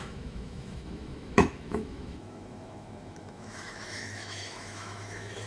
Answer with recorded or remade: remade